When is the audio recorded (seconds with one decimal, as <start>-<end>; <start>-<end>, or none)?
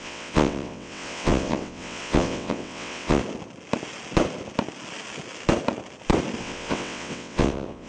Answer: 3.2-6.4